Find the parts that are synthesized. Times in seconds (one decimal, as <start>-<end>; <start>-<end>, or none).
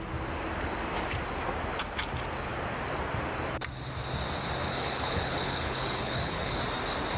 4.7-6.6